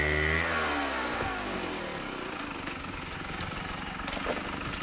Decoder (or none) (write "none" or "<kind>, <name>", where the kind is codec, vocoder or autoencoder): none